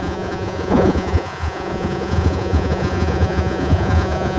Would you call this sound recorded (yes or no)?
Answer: no